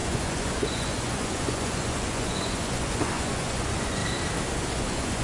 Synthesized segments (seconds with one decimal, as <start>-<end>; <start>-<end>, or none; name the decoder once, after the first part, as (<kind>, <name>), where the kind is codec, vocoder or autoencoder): 0.0-4.0 (vocoder, Vocos); 4.5-5.2